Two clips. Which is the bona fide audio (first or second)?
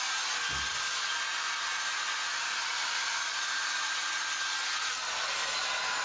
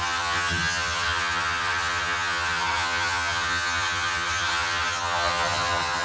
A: first